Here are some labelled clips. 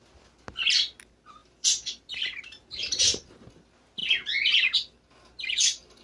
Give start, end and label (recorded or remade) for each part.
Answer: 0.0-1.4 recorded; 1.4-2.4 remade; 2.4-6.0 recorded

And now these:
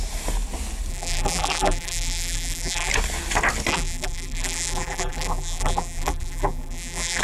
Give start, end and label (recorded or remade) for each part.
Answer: 0.0-0.9 recorded; 0.9-2.9 remade; 2.9-3.7 recorded; 3.7-7.2 remade

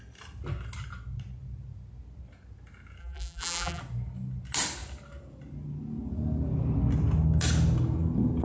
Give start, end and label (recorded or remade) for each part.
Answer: 0.0-3.0 recorded; 3.0-3.8 remade; 3.8-8.4 recorded

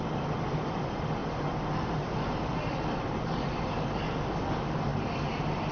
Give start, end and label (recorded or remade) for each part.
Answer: 0.0-5.7 recorded

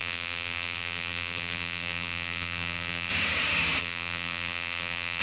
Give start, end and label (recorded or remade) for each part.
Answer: 0.0-3.1 remade; 3.1-3.8 recorded; 3.8-5.2 remade